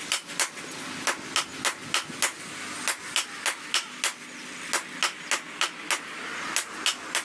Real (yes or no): yes